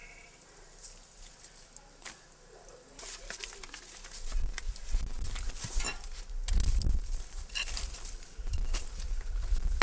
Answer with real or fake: real